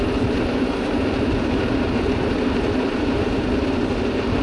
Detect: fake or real fake